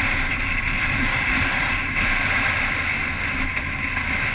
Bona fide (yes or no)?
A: no